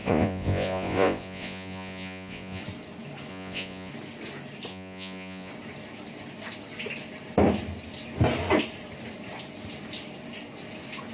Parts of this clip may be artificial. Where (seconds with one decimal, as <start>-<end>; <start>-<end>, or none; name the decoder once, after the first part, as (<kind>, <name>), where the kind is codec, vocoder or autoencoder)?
0.0-2.6 (vocoder, Vocos); 3.3-3.9; 4.7-5.5